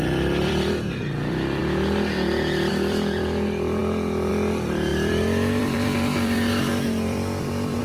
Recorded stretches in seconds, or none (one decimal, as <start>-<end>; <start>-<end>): 1.6-2.7